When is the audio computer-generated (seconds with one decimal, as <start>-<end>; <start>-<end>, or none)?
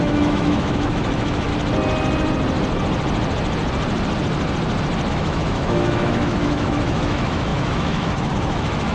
0.0-1.5; 5.1-8.9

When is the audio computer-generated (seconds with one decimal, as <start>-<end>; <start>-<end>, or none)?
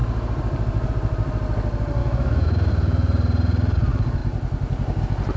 2.0-2.7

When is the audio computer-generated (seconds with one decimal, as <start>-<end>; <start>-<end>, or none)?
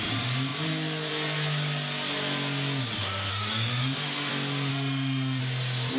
3.3-4.3; 4.7-5.4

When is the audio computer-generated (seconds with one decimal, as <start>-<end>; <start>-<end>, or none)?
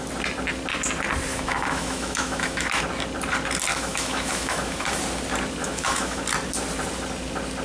1.3-2.8; 3.7-5.0; 5.6-6.2